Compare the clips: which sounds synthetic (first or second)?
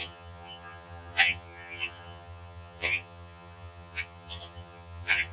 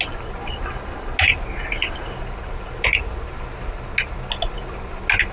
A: first